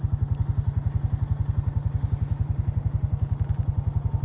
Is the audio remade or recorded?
recorded